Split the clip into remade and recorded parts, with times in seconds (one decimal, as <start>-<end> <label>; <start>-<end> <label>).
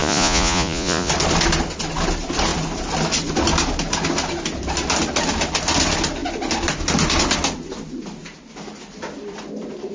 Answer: 0.0-1.1 remade; 1.1-9.9 recorded